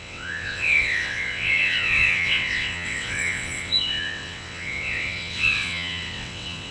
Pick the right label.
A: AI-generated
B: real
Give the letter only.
A